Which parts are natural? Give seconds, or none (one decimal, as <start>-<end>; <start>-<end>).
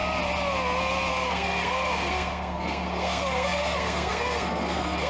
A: 0.0-1.1